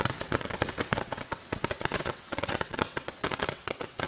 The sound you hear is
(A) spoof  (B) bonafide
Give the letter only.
A